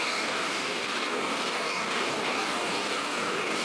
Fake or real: fake